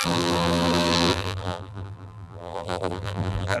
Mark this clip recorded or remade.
remade